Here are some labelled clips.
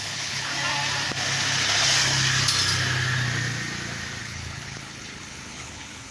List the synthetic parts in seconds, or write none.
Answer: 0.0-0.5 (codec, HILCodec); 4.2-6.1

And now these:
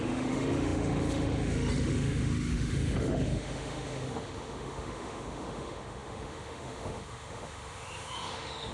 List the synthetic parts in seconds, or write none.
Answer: 0.0-8.7 (autoencoder, DAC-VAE)

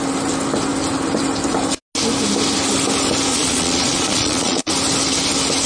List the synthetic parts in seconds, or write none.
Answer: 3.3-4.7 (vocoder, Vocos)

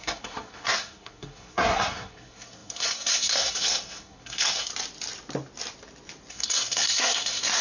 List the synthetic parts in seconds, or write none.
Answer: 0.0-4.7 (codec, SNAC); 6.3-7.6

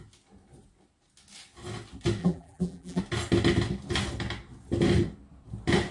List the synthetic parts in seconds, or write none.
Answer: 2.2-3.0 (vocoder, BigVGAN v2)

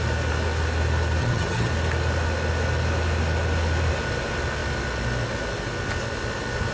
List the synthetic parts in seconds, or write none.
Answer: 1.2-1.7 (vocoder, HiFi-GAN)